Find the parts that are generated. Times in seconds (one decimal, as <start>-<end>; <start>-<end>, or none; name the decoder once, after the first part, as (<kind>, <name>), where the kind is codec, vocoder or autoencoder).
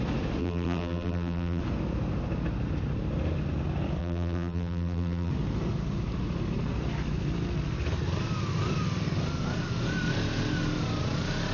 0.4-1.6 (vocoder, BigVGAN v2); 4.0-5.3